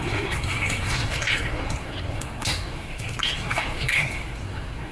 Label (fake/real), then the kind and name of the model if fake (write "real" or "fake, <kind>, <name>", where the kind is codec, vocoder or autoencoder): fake, codec, SNAC